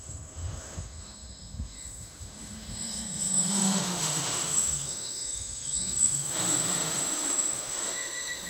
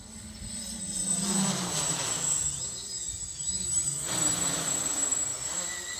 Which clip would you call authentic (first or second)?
second